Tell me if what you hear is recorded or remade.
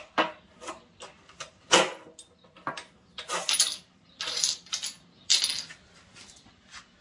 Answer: recorded